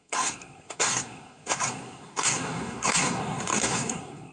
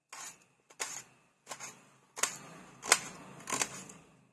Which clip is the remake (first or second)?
first